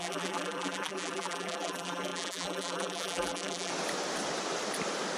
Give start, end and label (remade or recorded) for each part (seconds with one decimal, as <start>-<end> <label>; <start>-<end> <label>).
0.0-3.7 remade; 3.7-5.2 recorded